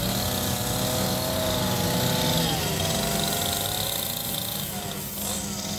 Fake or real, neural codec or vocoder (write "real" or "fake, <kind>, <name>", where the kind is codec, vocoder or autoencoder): real